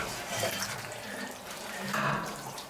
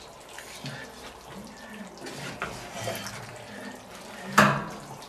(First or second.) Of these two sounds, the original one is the second